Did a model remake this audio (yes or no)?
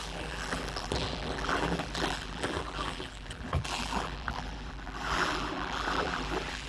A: yes